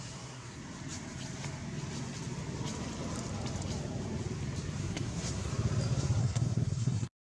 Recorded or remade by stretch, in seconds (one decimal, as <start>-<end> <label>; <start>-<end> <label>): 0.0-0.6 remade; 0.6-4.8 recorded; 4.8-5.5 remade; 5.5-6.2 recorded; 6.2-7.3 remade